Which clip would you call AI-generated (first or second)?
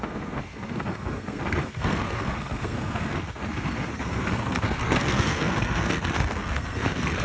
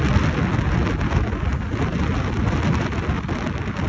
first